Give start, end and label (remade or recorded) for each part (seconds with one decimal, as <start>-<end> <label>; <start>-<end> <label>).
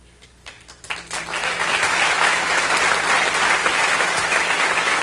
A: 0.0-1.4 recorded; 1.4-2.6 remade; 2.6-3.6 recorded; 3.6-5.0 remade